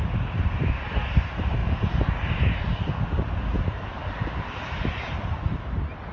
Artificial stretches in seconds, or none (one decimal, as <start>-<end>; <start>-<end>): none